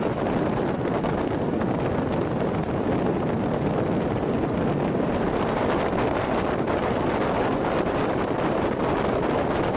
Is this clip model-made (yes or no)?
no